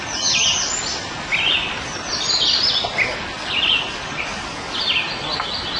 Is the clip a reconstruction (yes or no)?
no